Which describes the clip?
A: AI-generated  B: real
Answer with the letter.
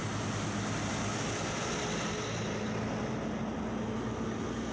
B